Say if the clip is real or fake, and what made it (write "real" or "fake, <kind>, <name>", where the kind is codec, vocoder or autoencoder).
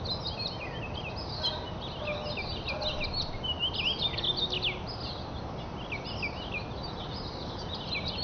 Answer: real